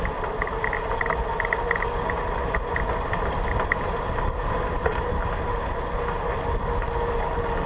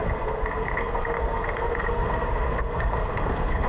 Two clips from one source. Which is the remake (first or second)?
second